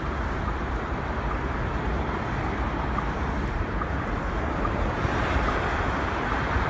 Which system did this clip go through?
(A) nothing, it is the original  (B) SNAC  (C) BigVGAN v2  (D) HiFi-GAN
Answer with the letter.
C